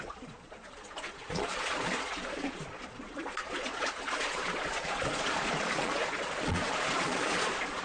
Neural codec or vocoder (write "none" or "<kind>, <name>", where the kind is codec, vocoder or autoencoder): vocoder, Vocos